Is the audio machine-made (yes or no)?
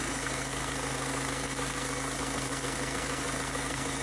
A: yes